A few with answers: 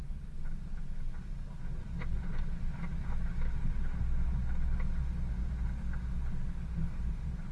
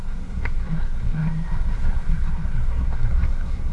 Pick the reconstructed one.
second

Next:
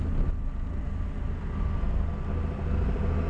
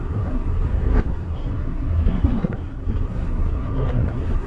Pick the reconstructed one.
second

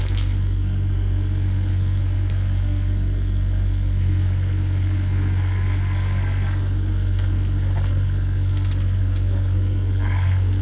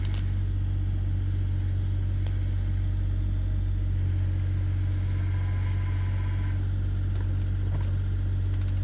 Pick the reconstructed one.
first